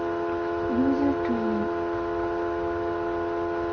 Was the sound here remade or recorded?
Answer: recorded